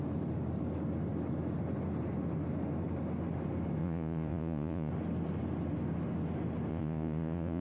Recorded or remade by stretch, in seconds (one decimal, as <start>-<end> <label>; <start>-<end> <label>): 0.0-3.8 recorded; 3.8-4.9 remade; 4.9-6.7 recorded; 6.7-7.6 remade